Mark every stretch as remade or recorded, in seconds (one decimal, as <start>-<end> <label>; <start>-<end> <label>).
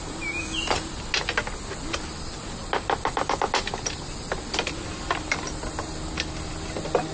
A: 0.0-7.1 recorded